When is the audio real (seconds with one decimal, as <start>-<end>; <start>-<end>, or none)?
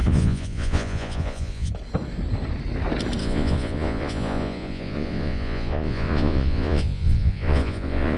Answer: 1.7-3.2